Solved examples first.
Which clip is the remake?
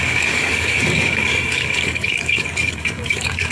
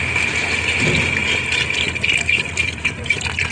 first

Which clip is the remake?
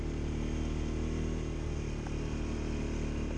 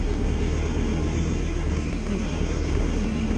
second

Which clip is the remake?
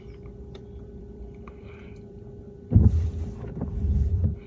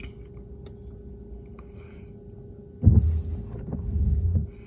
first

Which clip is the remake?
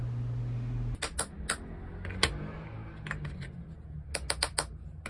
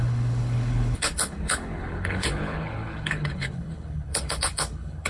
second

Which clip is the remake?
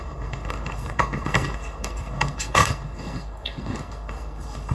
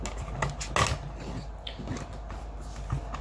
first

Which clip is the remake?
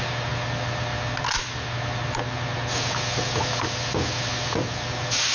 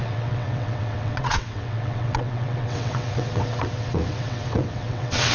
second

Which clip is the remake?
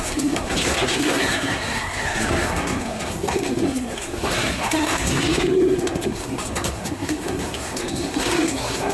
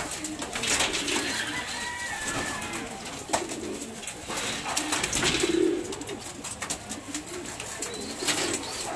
first